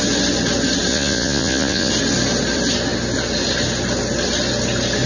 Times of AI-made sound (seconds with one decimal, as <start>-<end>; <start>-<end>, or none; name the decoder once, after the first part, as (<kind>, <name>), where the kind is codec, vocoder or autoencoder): 0.9-1.9 (vocoder, Vocos)